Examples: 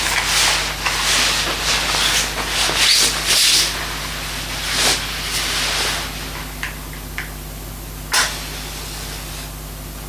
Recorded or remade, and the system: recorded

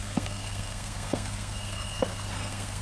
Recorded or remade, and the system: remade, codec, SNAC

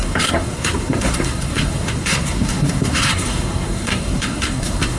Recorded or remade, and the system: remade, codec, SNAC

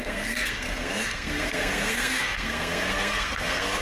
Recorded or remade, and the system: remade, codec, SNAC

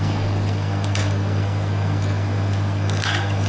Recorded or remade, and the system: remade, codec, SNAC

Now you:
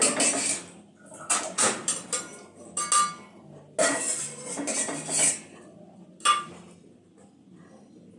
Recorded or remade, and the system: recorded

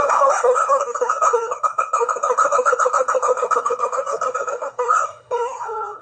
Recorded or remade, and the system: remade, codec, SNAC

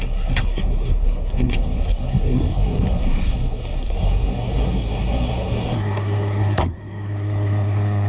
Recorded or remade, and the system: remade, codec, SNAC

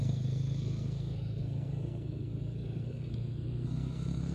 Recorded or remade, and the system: remade, codec, SNAC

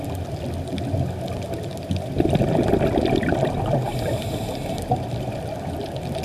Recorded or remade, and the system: recorded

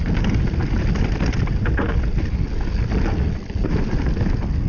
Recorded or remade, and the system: recorded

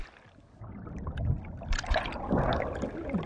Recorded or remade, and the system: recorded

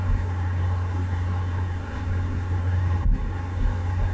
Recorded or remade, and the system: remade, codec, SNAC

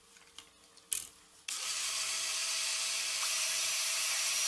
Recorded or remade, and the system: recorded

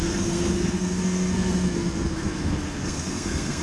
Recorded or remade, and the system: remade, codec, SNAC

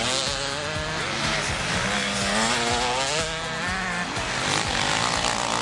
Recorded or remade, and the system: recorded